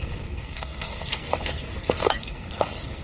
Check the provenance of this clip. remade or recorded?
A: remade